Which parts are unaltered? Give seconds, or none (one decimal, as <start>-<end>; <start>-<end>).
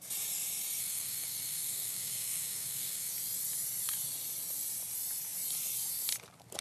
0.0-0.8; 3.1-6.6